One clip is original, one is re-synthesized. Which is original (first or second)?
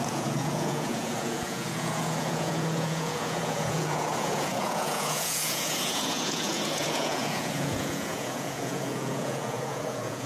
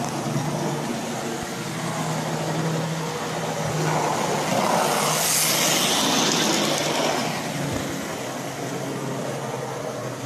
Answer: second